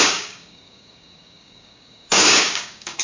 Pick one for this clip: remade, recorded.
remade